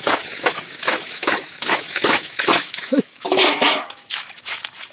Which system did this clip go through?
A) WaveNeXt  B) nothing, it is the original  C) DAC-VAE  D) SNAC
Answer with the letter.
C